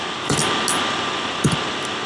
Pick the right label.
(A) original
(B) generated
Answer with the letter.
A